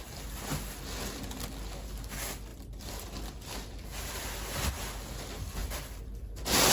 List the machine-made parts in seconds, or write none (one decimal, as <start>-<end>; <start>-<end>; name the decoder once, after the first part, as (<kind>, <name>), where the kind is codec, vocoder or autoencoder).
2.5-4.7 (vocoder, BigVGAN v2); 5.6-6.7